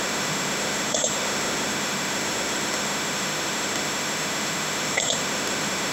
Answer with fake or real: fake